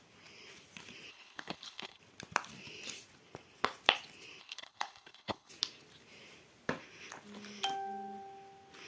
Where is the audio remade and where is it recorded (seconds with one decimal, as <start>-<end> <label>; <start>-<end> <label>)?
0.0-1.1 recorded; 1.1-2.0 remade; 2.0-4.4 recorded; 4.4-5.5 remade; 5.5-8.9 recorded